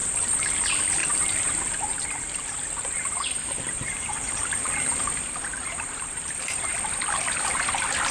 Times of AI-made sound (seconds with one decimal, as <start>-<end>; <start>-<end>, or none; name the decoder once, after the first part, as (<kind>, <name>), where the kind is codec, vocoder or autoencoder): 0.0-0.5 (vocoder, BigVGAN v2); 1.0-5.0; 5.5-6.7